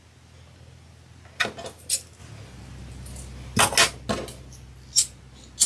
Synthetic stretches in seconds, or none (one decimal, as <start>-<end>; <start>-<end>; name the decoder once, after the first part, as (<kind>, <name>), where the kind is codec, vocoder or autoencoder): none